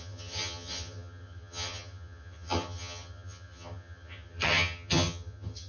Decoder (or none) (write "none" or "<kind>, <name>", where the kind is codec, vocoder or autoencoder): vocoder, HiFi-GAN